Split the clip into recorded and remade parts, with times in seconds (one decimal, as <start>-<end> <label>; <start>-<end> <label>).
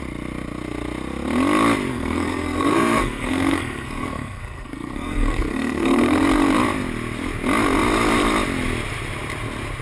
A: 0.0-1.9 recorded; 1.9-6.2 remade; 6.2-9.8 recorded